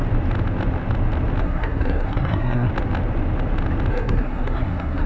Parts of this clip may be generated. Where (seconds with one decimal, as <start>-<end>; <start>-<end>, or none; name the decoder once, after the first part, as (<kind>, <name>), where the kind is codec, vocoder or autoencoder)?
1.4-2.7 (codec, SNAC); 3.9-5.1